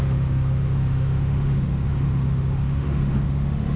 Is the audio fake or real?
fake